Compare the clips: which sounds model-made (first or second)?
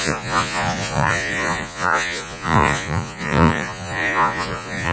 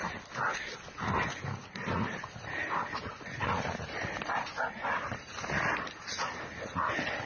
first